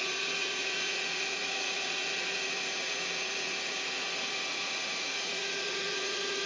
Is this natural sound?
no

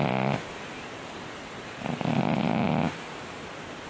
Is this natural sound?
yes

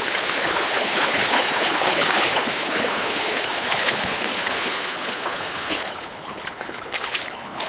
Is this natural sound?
no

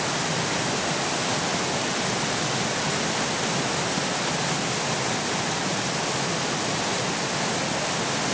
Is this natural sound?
yes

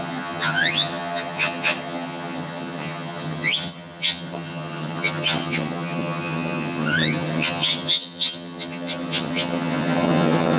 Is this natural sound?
no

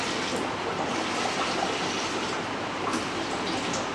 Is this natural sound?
yes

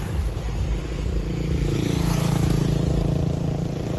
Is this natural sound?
yes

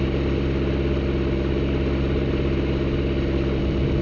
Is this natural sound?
yes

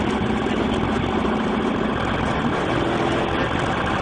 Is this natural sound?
yes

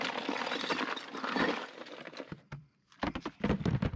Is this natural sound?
no